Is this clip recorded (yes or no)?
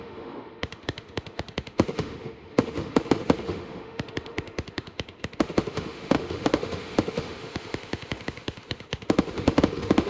no